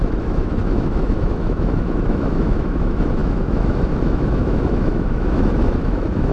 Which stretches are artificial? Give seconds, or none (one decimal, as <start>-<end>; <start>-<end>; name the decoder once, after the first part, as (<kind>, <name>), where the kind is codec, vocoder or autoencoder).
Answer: 0.0-6.3 (autoencoder, DAC-VAE)